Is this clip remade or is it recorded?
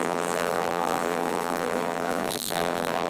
remade